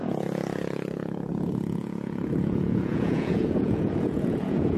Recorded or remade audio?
remade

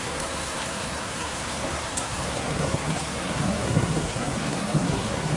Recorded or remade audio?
remade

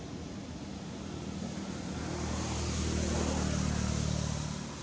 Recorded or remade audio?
recorded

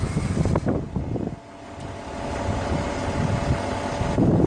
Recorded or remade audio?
recorded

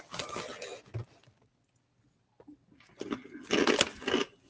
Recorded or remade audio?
recorded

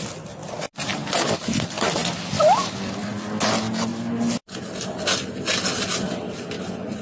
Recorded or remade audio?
recorded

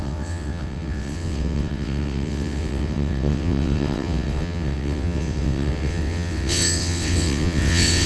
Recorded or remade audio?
remade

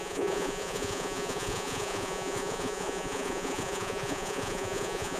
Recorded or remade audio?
remade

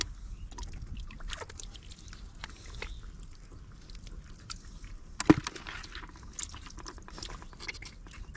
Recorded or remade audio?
recorded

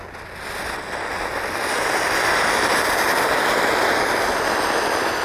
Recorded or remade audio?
recorded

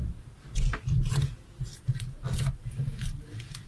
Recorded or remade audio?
recorded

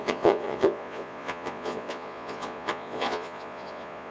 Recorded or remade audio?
remade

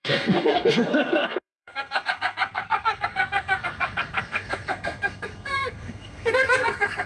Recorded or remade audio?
remade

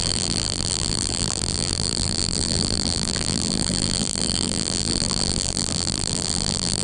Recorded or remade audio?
remade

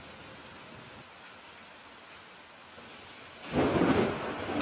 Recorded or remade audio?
recorded